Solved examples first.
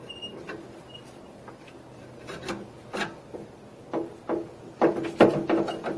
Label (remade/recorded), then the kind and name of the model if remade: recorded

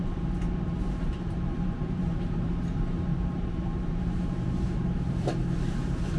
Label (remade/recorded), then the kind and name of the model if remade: remade, vocoder, BigVGAN v2